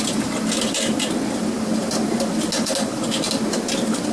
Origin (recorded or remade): recorded